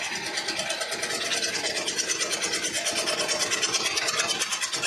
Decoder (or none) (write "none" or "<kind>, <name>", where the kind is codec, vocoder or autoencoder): none